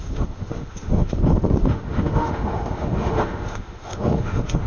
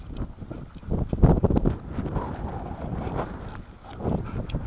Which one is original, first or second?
second